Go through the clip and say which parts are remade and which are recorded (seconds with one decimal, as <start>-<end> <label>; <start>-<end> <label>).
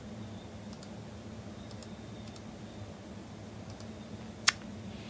0.0-5.1 recorded